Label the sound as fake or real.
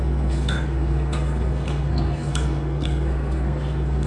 fake